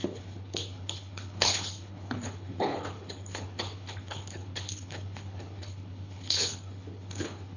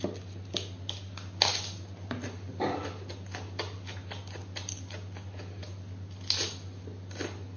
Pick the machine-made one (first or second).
first